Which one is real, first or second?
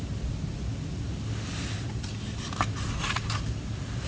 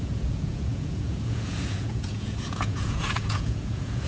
first